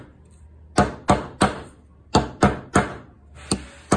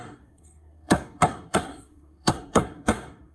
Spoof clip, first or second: second